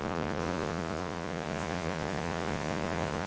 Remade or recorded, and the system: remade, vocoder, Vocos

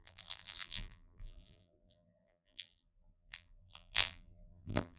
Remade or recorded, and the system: remade, vocoder, BigVGAN v2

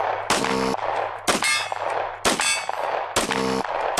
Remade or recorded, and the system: recorded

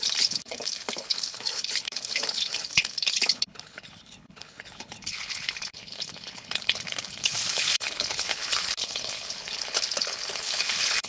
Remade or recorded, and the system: remade, codec, HILCodec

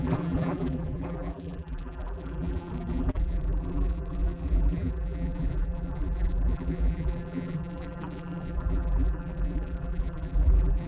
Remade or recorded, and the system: remade, vocoder, BigVGAN v2